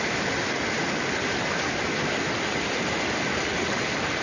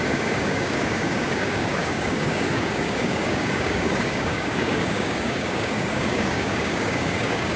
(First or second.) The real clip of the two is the first